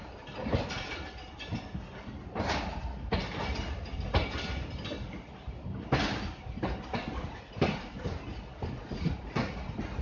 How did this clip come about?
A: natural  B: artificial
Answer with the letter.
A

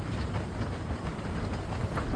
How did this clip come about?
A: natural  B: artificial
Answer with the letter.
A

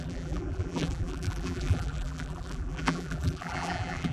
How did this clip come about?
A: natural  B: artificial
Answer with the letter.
B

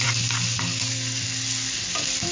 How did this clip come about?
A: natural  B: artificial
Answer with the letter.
A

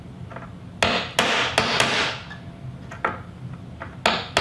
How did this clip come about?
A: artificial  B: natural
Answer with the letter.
B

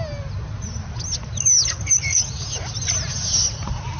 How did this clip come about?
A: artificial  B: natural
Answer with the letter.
B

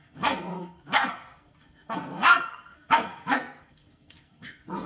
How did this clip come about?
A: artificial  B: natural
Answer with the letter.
A